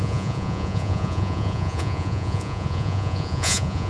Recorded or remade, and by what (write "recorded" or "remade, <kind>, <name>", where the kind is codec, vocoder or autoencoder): remade, vocoder, Vocos